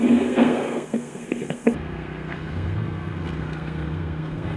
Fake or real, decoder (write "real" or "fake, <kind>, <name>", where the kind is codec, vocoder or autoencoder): fake, codec, SNAC